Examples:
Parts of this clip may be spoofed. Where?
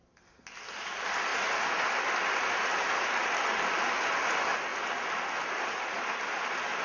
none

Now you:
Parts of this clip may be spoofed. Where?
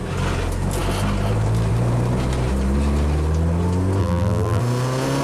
4.0-4.6 (vocoder, BigVGAN v2)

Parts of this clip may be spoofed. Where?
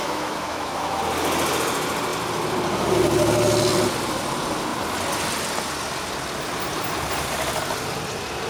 0.0-1.0 (autoencoder, DAC-VAE)